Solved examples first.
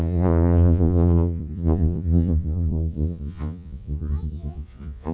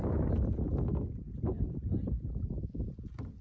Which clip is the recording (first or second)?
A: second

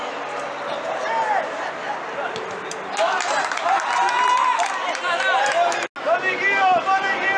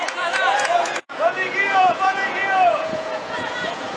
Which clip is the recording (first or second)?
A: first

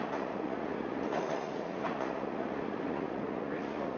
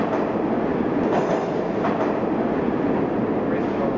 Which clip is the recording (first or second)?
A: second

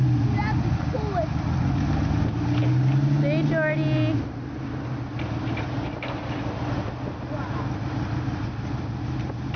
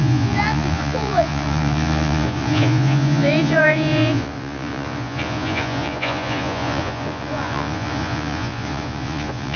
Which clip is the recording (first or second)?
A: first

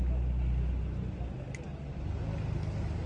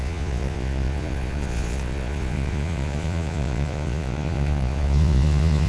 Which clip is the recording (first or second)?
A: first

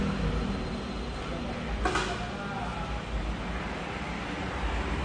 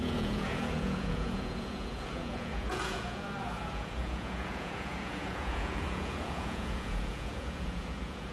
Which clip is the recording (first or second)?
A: first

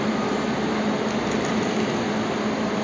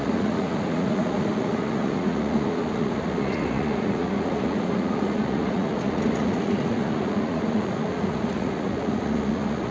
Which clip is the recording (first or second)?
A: first